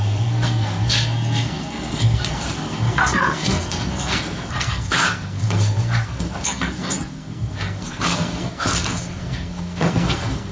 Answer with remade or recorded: remade